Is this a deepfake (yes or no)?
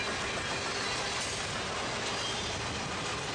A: no